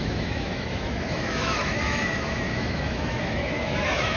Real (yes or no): no